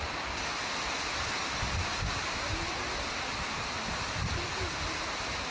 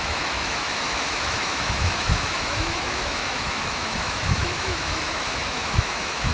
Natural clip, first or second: first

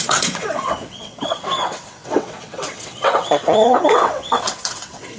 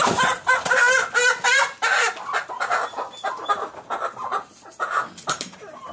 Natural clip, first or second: second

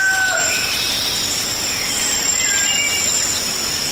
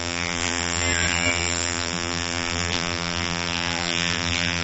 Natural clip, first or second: first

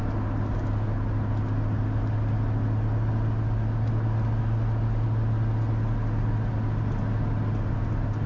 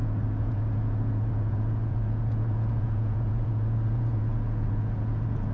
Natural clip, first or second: first